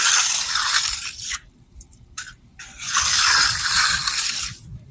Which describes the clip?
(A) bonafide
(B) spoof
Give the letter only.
B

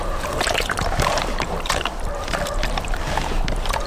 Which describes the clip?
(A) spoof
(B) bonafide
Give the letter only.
A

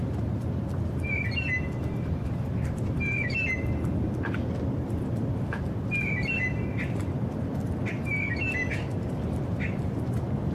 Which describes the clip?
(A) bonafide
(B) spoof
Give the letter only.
A